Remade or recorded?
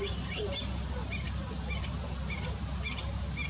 recorded